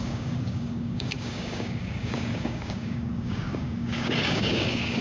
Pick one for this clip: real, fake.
fake